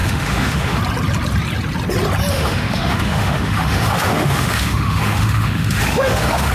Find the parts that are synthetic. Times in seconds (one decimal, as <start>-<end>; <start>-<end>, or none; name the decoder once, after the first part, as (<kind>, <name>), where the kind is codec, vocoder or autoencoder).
0.0-0.8 (autoencoder, DAC-VAE); 2.3-6.5